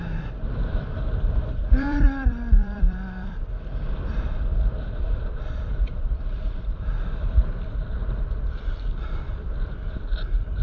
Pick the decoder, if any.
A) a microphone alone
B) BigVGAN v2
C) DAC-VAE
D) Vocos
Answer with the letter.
B